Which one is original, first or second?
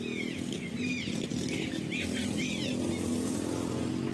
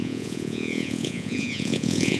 first